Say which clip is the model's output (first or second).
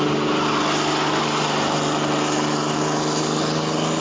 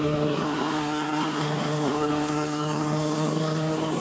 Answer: second